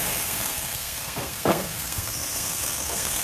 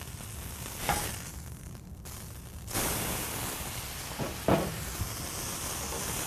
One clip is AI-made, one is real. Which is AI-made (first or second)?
first